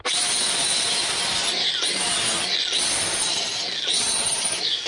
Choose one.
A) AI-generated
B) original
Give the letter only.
B